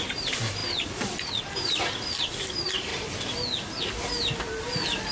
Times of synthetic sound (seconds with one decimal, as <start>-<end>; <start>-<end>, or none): 0.0-0.6; 1.4-2.9; 4.4-5.1